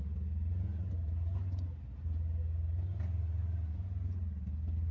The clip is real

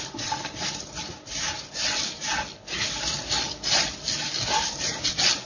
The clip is real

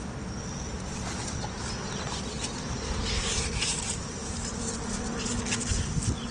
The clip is real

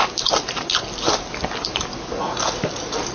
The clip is real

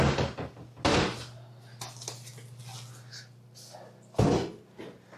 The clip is real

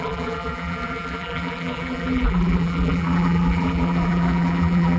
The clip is fake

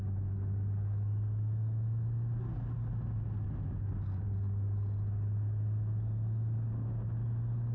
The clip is real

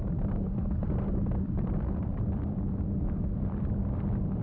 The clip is fake